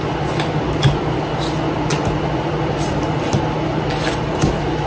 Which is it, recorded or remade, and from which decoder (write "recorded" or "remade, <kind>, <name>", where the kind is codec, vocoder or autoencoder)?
recorded